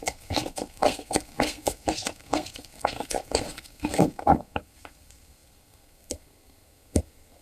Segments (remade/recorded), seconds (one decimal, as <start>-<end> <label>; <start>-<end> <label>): 0.0-7.4 remade